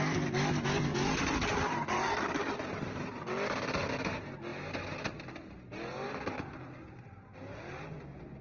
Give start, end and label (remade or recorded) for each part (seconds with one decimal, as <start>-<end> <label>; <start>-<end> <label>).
0.0-0.9 recorded; 0.9-3.3 remade; 3.3-8.4 recorded